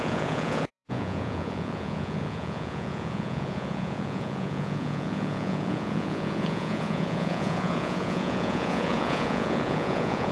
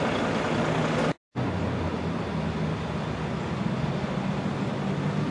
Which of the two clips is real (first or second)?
second